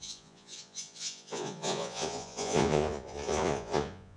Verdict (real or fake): fake